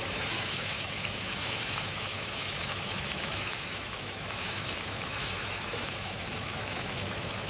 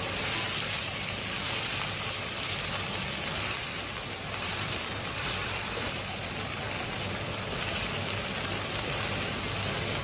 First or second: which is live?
second